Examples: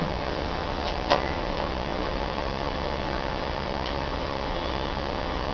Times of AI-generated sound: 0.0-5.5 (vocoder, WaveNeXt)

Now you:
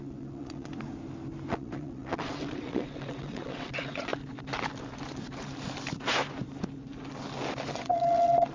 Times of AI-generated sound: 0.0-0.7 (vocoder, WaveNeXt); 1.5-4.1; 7.7-8.5

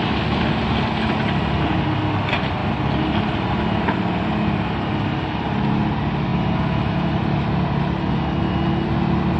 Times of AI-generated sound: none

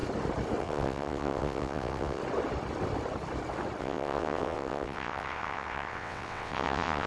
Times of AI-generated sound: 0.6-2.2 (vocoder, WaveNeXt); 3.8-7.1

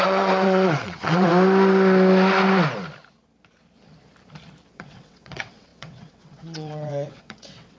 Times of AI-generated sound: 0.0-1.3 (vocoder, WaveNeXt); 4.7-7.8

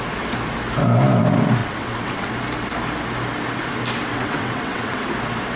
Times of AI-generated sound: 1.6-2.3 (vocoder, WaveNeXt); 4.1-5.1